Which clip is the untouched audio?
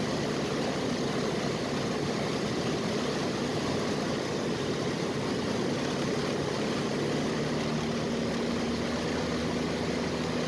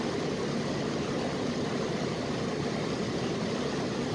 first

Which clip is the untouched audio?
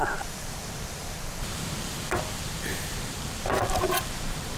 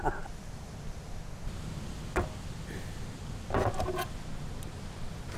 second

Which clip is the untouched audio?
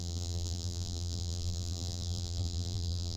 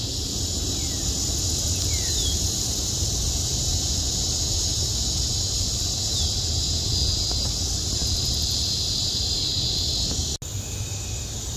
second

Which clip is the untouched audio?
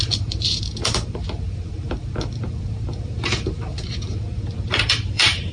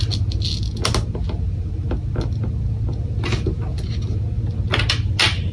second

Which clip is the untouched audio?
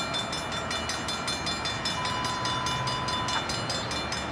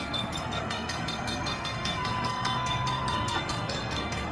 first